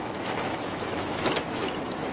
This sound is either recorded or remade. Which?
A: remade